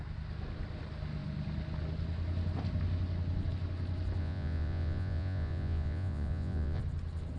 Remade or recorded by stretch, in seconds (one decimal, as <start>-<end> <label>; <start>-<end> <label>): 0.0-4.2 recorded; 4.2-6.8 remade; 6.8-7.4 recorded